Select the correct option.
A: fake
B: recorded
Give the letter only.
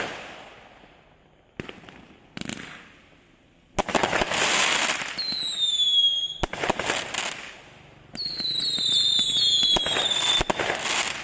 B